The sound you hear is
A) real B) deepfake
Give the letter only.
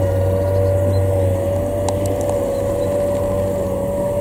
A